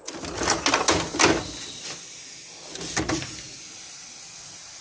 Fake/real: real